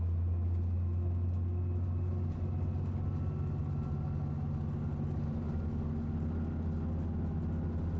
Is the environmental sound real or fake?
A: real